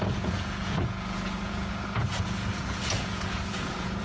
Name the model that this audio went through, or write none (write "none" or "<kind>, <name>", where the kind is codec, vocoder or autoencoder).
vocoder, Vocos